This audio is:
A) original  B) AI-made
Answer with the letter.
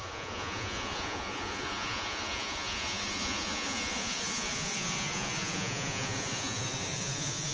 B